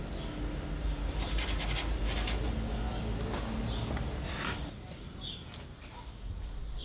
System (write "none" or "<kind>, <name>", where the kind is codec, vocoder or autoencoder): none